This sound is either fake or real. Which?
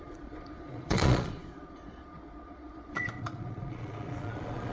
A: fake